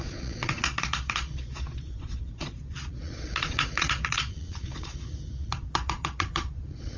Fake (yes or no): yes